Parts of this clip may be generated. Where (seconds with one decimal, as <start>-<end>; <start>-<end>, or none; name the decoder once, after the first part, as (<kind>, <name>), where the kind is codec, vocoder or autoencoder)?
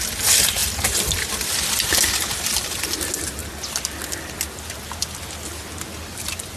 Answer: none